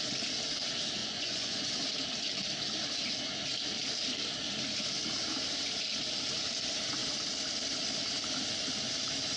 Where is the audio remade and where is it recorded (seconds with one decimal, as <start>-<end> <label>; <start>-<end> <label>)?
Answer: 0.0-1.0 recorded; 1.0-1.7 remade; 1.7-9.4 recorded